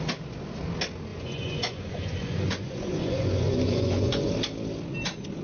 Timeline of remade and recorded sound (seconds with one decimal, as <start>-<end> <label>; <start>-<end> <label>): 0.0-1.1 recorded; 1.1-4.3 remade; 4.3-5.4 recorded